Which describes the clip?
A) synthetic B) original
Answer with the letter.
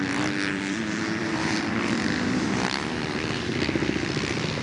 A